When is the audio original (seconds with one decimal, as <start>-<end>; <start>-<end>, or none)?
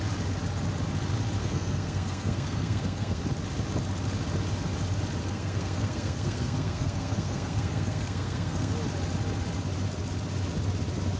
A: 0.0-1.4; 3.2-5.2; 8.7-11.2